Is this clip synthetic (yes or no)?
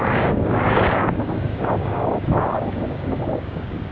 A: yes